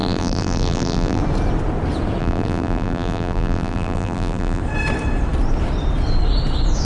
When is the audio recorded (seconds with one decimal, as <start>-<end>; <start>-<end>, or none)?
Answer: 1.2-2.2; 4.6-6.8